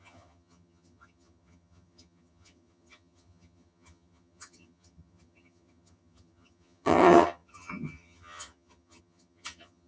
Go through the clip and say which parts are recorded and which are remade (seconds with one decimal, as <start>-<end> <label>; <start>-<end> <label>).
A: 0.0-9.9 remade